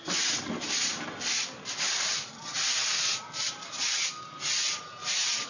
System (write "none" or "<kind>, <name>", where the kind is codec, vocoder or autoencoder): none